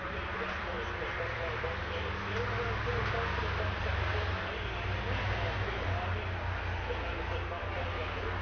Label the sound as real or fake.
real